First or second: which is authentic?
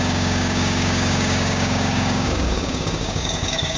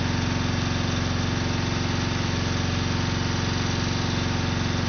second